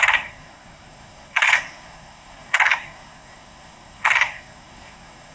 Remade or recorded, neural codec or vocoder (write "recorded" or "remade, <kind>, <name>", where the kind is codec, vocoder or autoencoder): remade, codec, SNAC